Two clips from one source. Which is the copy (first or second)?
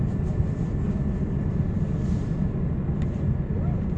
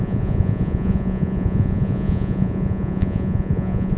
second